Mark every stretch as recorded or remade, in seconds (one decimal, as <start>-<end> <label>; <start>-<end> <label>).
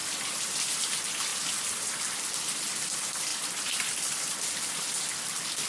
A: 0.0-0.8 remade; 0.8-3.3 recorded; 3.3-3.9 remade; 3.9-5.7 recorded